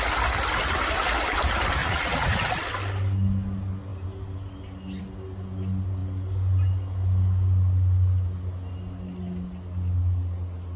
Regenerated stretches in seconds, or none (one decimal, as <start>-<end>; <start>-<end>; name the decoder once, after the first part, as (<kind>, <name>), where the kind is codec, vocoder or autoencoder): 1.8-2.5 (vocoder, Vocos)